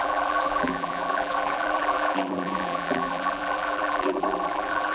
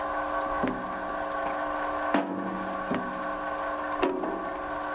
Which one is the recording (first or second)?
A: second